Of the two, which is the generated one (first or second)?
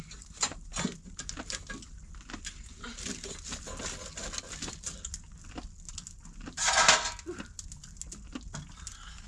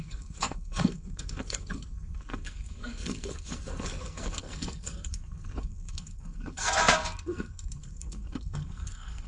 second